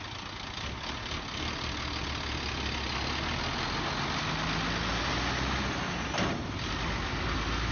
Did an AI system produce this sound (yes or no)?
no